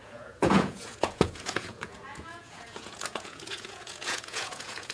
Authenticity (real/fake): fake